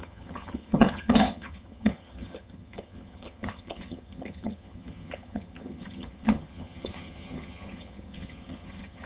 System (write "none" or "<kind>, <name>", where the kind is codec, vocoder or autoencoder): vocoder, HiFi-GAN